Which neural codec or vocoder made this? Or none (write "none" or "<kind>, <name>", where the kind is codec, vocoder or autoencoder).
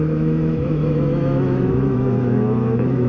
autoencoder, DAC-VAE